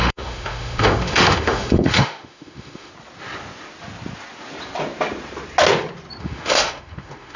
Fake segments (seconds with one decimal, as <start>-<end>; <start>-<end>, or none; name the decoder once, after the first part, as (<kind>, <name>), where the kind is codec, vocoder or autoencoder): 0.0-2.9 (autoencoder, DAC-VAE); 6.2-7.4